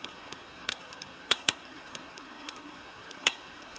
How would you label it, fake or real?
fake